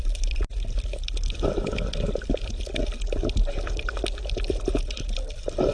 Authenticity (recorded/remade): recorded